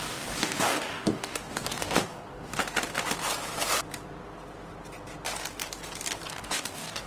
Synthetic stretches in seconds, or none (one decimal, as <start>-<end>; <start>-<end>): 0.0-2.6; 6.3-7.1